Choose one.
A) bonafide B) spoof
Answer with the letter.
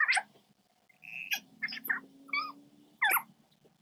A